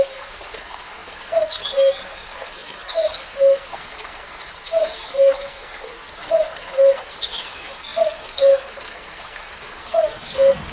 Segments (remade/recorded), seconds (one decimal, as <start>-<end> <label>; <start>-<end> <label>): 0.0-10.7 remade